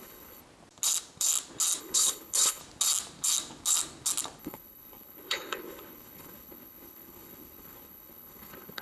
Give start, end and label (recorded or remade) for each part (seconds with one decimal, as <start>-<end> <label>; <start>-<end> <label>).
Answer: 0.0-0.4 remade; 0.4-1.8 recorded; 1.8-2.6 remade; 2.6-4.4 recorded; 4.4-8.8 remade